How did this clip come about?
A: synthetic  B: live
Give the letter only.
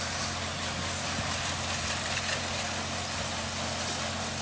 B